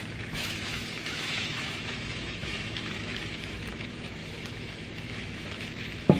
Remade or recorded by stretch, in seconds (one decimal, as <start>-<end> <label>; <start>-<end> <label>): 0.0-6.2 remade